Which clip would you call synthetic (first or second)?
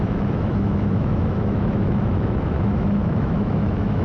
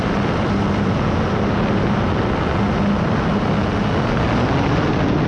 first